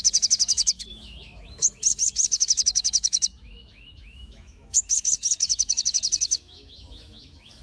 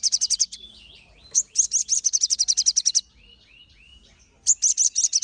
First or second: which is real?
second